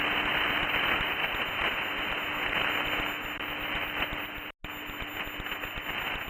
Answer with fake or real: real